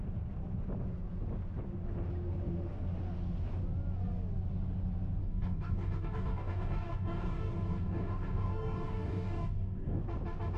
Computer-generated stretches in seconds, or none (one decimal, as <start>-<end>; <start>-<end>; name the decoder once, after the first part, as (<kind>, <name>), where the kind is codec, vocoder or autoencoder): 5.2-10.0 (codec, DAC)